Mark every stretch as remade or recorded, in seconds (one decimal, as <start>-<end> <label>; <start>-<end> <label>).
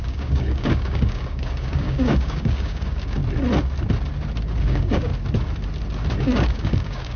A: 0.0-3.2 remade; 3.2-4.6 recorded; 4.6-5.1 remade; 5.1-6.2 recorded; 6.2-7.2 remade